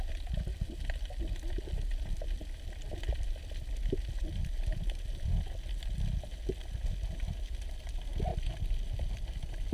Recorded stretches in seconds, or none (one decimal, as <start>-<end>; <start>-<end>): 0.0-9.7